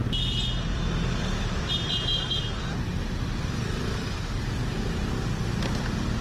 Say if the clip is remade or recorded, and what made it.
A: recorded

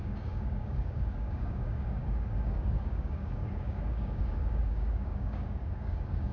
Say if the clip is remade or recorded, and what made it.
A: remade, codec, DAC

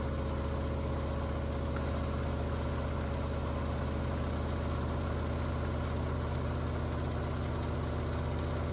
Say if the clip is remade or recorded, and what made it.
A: recorded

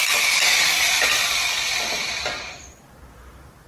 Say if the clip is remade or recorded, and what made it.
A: recorded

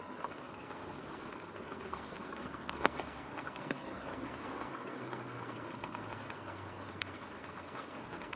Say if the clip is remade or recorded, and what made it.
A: remade, codec, SNAC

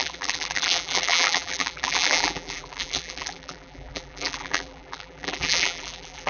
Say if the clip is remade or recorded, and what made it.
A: remade, vocoder, BigVGAN v2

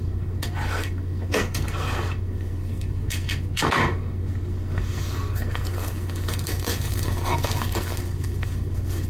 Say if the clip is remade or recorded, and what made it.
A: remade, codec, SNAC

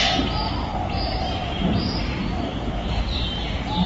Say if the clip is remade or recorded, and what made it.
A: remade, vocoder, BigVGAN v2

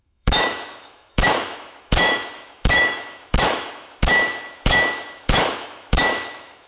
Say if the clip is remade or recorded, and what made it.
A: remade, autoencoder, DAC-VAE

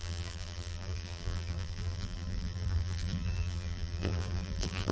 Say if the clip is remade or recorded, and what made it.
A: remade, vocoder, BigVGAN v2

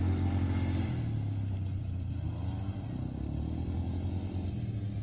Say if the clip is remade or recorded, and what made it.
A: recorded